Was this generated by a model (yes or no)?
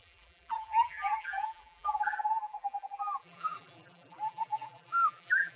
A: yes